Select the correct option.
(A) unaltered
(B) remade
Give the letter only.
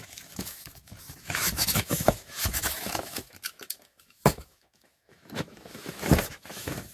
B